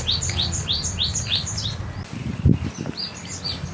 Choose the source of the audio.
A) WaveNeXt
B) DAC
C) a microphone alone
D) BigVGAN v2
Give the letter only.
C